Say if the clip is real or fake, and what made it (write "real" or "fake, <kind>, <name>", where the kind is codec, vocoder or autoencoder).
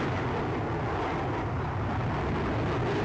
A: real